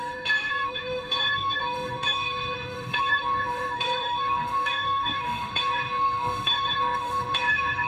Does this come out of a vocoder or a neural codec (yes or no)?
yes